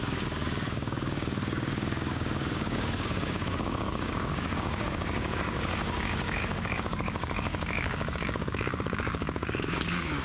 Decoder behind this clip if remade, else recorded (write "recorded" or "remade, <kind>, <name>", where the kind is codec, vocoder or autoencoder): remade, codec, DAC